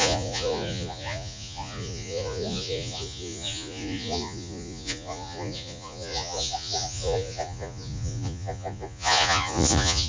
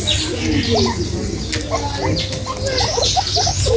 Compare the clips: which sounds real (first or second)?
second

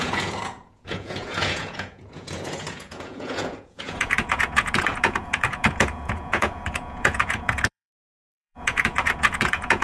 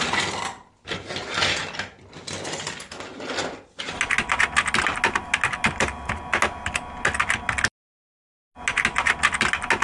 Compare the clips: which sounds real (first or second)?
second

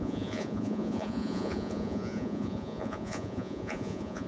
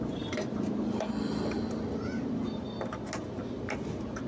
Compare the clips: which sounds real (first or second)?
second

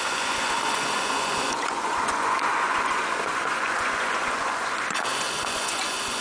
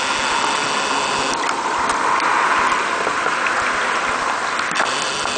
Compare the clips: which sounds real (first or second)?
second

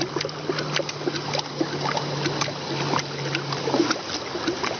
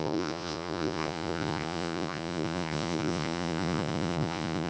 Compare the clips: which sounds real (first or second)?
first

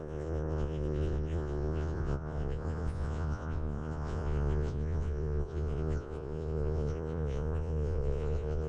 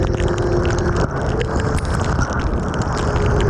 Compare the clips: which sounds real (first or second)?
second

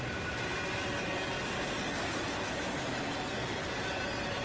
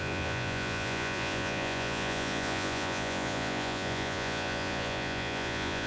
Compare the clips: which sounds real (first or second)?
first